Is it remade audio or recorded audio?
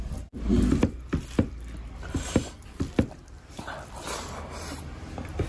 recorded